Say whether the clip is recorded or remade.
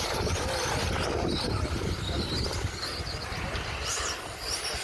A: recorded